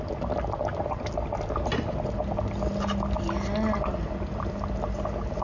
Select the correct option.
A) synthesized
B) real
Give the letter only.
B